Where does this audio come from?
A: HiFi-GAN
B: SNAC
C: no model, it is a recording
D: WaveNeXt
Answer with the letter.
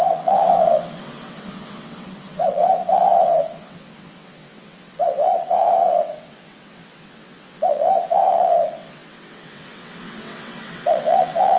D